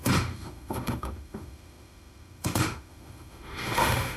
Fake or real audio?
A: fake